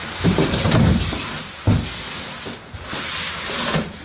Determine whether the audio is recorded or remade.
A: recorded